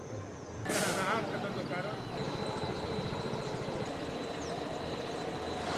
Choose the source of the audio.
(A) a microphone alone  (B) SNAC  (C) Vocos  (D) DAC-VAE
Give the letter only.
A